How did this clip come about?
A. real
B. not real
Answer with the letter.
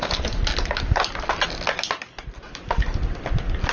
A